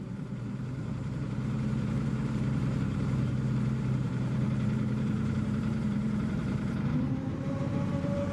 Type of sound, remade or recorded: remade